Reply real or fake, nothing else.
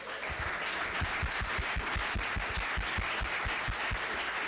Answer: real